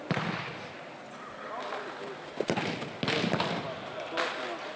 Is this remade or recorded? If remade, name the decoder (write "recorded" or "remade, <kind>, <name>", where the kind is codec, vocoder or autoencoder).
recorded